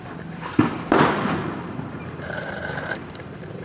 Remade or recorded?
remade